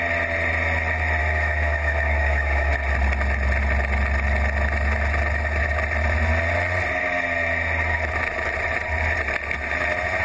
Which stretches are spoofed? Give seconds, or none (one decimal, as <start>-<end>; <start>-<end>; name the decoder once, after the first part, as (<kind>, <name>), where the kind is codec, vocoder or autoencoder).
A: 1.2-2.7 (autoencoder, DAC-VAE)